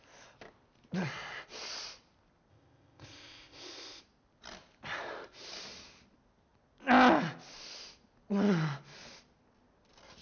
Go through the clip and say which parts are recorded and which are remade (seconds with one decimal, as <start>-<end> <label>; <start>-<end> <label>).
0.0-2.5 recorded; 2.5-4.0 remade; 4.0-10.2 recorded

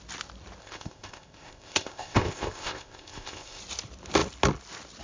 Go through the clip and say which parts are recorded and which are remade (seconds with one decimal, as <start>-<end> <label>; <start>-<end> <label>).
0.0-0.6 recorded; 0.6-3.6 remade; 3.6-5.0 recorded

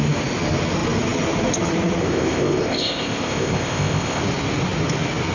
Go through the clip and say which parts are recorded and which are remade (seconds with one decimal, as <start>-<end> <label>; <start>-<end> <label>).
0.0-2.0 recorded; 2.0-4.2 remade; 4.2-5.3 recorded

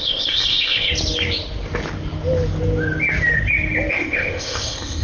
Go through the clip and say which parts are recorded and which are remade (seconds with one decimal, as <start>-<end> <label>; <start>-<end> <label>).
0.0-0.9 remade; 0.9-3.9 recorded; 3.9-5.0 remade